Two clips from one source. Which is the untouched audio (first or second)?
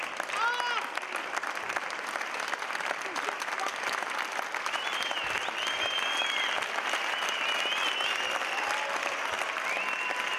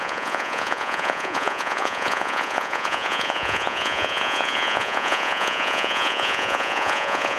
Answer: first